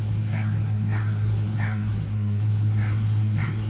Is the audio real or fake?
fake